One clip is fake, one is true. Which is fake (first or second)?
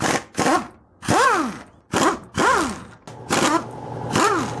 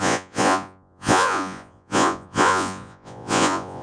second